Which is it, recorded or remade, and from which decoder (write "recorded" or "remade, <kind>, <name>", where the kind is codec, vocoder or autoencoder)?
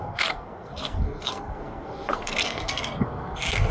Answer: remade, codec, SNAC